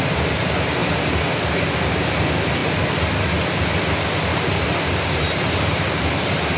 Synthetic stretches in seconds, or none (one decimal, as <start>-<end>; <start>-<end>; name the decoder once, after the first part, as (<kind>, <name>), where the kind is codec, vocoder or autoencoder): 4.3-6.0 (vocoder, BigVGAN v2)